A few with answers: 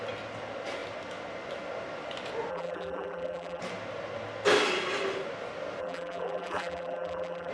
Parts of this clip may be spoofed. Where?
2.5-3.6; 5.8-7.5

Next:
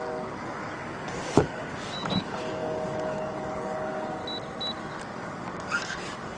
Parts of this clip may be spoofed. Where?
0.0-4.2; 5.0-6.4